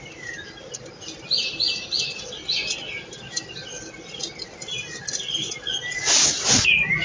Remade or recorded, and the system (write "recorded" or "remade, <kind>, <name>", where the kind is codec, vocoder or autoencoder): recorded